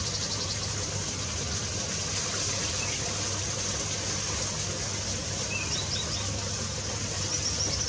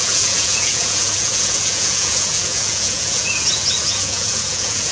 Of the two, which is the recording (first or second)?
first